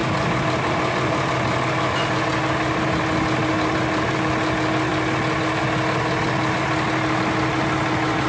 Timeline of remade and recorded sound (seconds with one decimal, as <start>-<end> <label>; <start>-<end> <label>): 0.0-8.3 recorded